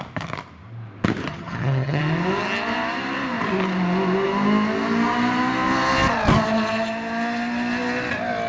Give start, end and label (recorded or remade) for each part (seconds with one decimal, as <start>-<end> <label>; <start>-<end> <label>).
0.0-1.3 recorded; 1.3-2.0 remade; 2.0-8.5 recorded